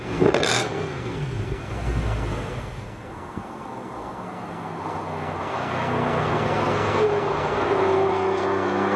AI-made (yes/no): yes